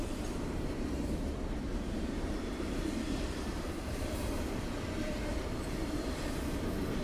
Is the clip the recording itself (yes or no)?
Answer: no